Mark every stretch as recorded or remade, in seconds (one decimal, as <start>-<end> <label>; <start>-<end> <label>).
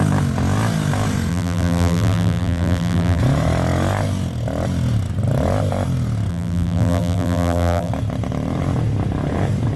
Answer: 0.0-1.3 recorded; 1.3-3.2 remade; 3.2-6.3 recorded; 6.3-7.9 remade; 7.9-9.8 recorded